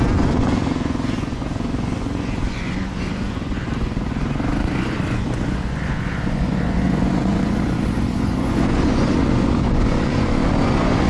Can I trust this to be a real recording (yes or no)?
no